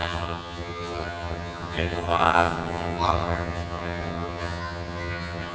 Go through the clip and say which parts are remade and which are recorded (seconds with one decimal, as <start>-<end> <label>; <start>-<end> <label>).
0.0-5.5 remade